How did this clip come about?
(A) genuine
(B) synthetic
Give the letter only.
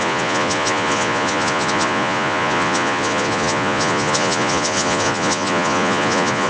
B